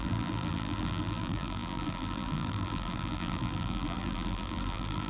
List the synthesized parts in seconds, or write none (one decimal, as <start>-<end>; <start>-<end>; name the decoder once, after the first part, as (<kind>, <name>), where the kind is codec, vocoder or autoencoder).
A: 0.0-5.1 (vocoder, BigVGAN v2)